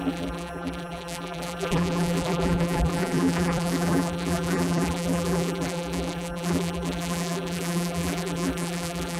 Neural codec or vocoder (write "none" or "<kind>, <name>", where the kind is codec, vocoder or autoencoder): vocoder, BigVGAN v2